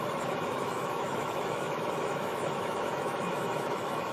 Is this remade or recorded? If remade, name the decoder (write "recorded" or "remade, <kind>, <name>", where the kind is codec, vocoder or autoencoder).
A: remade, autoencoder, DAC-VAE